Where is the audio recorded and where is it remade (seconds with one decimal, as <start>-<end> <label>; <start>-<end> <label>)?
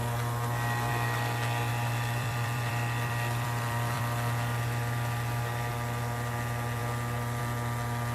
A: 0.0-1.7 recorded; 1.7-5.7 remade; 5.7-8.1 recorded